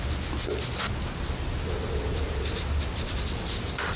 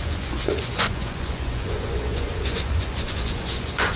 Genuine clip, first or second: first